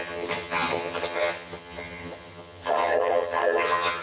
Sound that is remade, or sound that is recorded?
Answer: remade